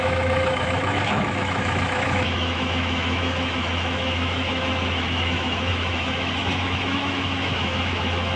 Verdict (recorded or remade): remade